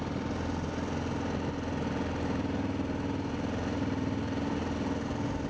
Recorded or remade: recorded